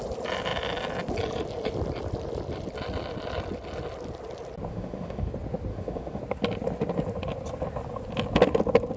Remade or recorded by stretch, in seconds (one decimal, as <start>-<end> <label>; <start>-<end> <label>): 0.0-4.7 recorded; 4.7-5.3 remade; 5.3-5.7 recorded; 5.7-6.2 remade; 6.2-9.0 recorded